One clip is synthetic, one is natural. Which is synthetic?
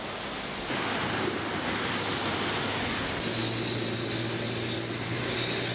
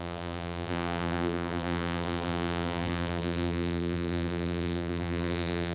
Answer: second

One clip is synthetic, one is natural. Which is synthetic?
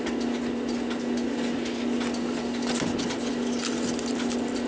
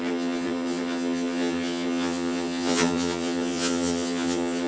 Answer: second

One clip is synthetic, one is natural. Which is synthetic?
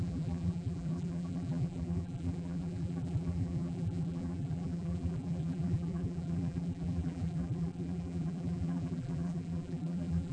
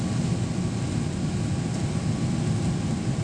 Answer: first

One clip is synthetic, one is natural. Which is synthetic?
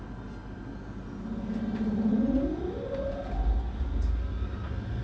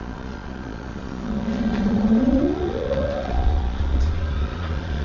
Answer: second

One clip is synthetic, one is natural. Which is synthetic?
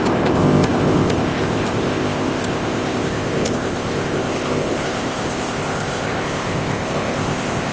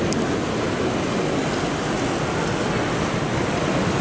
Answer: first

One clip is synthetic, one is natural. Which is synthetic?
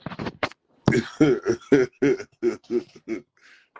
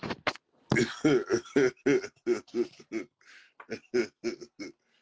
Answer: first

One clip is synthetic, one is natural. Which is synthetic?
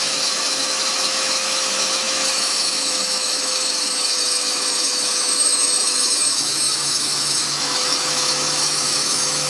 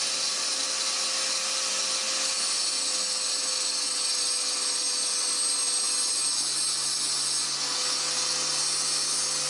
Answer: first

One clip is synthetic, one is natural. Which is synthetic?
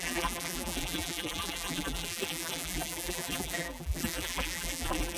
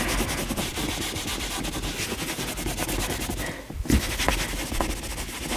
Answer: first